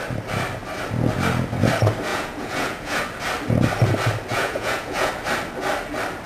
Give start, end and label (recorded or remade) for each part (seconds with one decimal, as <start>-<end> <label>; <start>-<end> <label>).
0.0-2.1 recorded; 2.1-3.0 remade; 3.0-4.3 recorded; 4.3-5.1 remade; 5.1-6.3 recorded